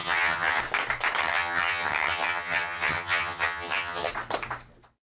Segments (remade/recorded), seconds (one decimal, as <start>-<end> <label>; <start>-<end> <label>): 0.0-0.6 remade; 0.6-1.2 recorded; 1.2-4.1 remade; 4.1-5.0 recorded

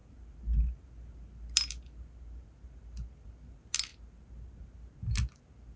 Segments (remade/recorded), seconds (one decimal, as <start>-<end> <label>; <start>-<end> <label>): 0.0-5.8 recorded

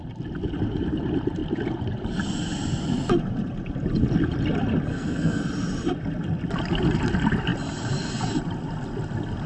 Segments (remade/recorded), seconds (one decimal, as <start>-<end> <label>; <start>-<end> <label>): 0.0-4.9 recorded; 4.9-5.4 remade; 5.4-9.5 recorded

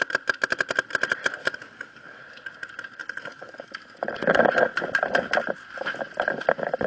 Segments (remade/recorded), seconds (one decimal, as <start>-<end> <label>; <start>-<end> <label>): 0.0-1.4 recorded; 1.4-2.2 remade; 2.2-3.0 recorded; 3.0-3.7 remade; 3.7-6.9 recorded

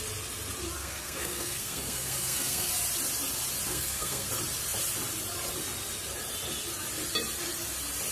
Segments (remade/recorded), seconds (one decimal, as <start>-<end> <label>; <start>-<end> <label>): 0.0-0.8 recorded; 0.8-2.7 remade; 2.7-3.7 recorded; 3.7-4.3 remade; 4.3-8.1 recorded

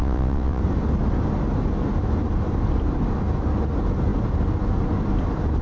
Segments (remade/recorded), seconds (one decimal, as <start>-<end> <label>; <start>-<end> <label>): 0.0-0.6 remade; 0.6-5.6 recorded

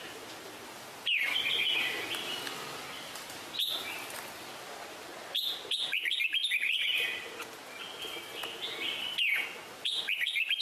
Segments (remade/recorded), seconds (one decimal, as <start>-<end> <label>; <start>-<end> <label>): 0.0-10.6 recorded

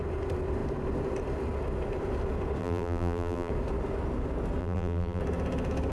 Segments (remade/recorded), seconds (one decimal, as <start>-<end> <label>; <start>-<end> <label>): 0.0-2.6 recorded; 2.6-3.5 remade; 3.5-4.6 recorded; 4.6-5.2 remade; 5.2-5.9 recorded